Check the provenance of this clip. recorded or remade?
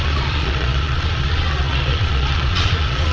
remade